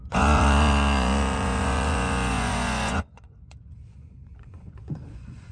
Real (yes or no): no